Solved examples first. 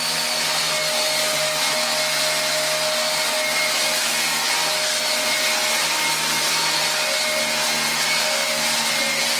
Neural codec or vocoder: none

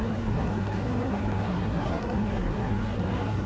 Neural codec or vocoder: codec, SNAC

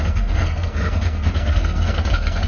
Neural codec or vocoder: codec, SNAC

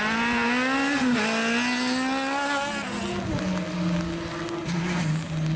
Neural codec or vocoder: none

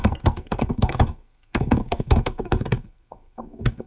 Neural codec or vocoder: codec, SNAC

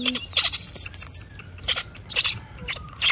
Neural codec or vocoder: none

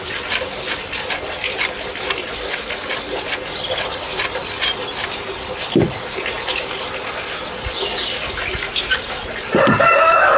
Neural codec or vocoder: none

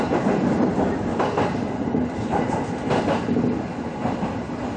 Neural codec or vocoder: none